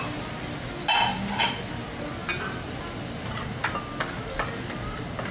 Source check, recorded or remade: recorded